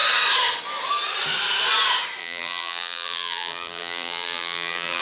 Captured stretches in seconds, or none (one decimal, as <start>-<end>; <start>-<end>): 0.0-2.2